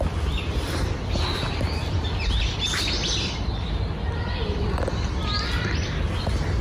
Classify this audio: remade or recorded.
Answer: recorded